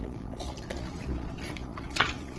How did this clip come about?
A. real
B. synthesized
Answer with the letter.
B